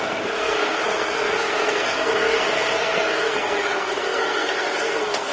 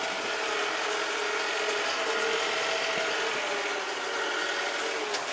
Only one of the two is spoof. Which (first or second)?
first